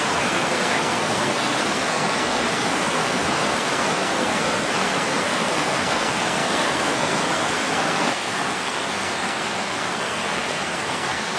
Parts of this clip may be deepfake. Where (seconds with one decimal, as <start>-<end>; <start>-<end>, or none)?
0.0-11.4